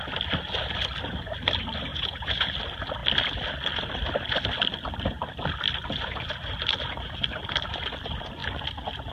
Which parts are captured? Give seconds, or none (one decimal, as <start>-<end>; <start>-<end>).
0.0-1.9; 2.5-9.1